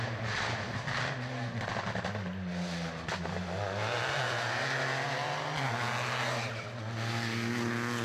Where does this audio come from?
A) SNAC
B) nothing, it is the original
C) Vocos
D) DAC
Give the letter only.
B